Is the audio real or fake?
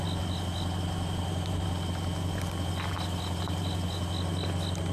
real